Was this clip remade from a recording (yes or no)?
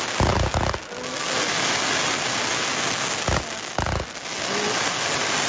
no